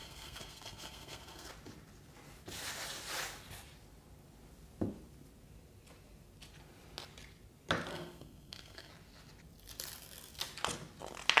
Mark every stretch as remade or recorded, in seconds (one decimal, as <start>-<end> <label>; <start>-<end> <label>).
0.0-1.5 remade; 1.5-7.9 recorded; 7.9-8.9 remade; 8.9-11.4 recorded